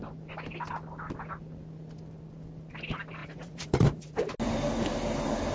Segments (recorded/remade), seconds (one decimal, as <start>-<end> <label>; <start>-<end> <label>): 0.0-3.2 recorded; 3.2-4.3 remade; 4.3-5.5 recorded